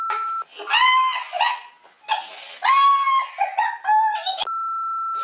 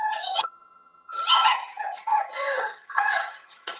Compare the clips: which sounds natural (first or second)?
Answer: first